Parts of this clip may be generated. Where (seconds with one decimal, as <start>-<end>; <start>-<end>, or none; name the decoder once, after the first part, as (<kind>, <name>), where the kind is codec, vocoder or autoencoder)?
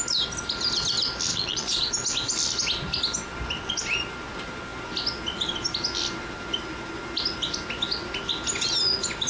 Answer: 1.3-1.9 (vocoder, Vocos)